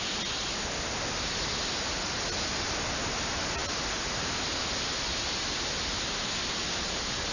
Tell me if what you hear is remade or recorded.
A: recorded